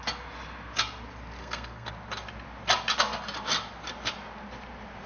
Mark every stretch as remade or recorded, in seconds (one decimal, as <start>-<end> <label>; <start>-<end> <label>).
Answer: 0.0-1.4 recorded; 1.4-1.9 remade; 1.9-5.1 recorded